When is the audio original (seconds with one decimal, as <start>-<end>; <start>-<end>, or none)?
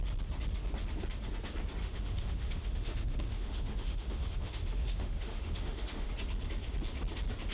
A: 0.0-1.8; 6.1-7.5